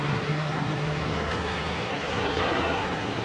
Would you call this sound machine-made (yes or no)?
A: yes